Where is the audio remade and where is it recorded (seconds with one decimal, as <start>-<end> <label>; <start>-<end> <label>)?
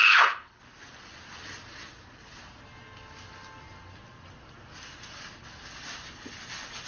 0.0-0.6 remade; 0.6-6.9 recorded